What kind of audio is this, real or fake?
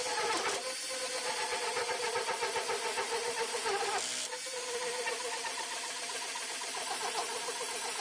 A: real